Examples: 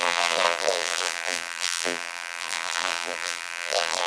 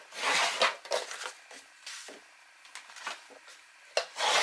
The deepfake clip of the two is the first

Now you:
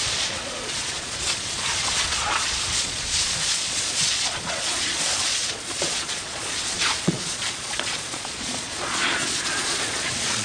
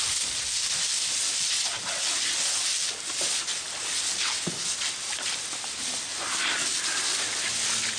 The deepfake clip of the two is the first